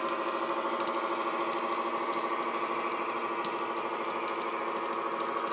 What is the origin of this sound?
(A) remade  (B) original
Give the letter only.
B